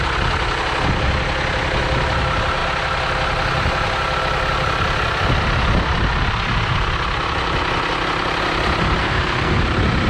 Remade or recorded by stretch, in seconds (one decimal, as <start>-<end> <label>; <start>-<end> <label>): 0.0-9.0 recorded; 9.0-9.6 remade; 9.6-10.1 recorded